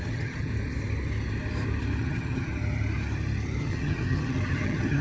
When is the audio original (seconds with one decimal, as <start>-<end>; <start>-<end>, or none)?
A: 0.5-2.0; 2.5-3.6

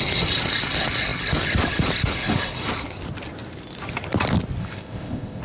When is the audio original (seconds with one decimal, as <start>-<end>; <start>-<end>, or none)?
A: 0.0-4.6

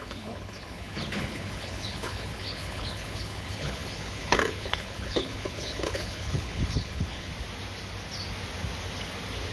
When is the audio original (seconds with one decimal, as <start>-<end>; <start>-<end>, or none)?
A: 7.3-9.5

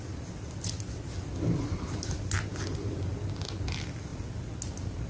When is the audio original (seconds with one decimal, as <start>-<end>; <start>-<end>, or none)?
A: 0.0-5.1

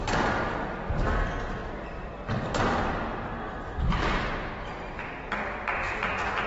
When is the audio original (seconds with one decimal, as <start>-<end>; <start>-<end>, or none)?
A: 0.0-6.5

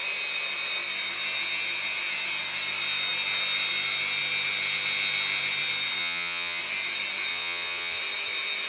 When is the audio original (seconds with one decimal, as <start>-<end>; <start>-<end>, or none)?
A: 0.0-6.0; 6.6-7.3; 8.0-8.7

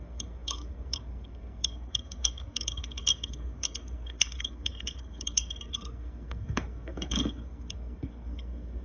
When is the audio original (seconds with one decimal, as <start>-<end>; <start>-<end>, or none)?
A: none

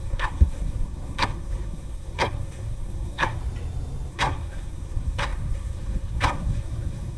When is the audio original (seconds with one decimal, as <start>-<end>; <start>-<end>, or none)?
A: 3.4-4.1